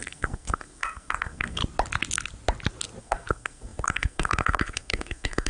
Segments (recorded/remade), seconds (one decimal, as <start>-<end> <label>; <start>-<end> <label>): 0.0-1.6 remade; 1.6-3.0 recorded; 3.0-5.5 remade